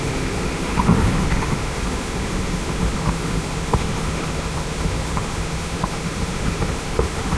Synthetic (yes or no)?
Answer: yes